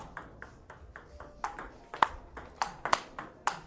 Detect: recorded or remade recorded